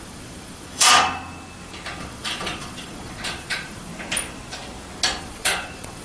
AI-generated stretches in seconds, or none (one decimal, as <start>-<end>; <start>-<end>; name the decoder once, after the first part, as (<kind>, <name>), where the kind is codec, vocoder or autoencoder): 0.0-0.9 (vocoder, Vocos); 2.0-3.9; 5.2-6.0